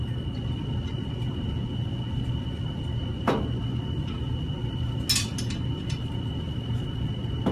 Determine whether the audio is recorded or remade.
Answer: recorded